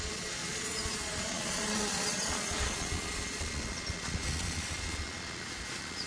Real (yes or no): no